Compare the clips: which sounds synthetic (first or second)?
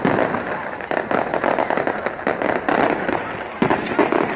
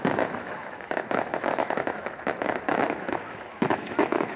second